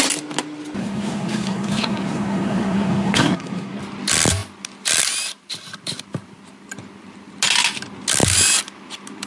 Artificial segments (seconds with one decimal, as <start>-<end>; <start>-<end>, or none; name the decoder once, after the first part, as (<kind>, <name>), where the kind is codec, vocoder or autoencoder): 0.8-3.8 (codec, SNAC)